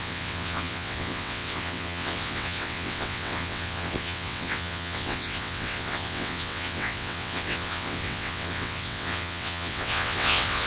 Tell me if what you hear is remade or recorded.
remade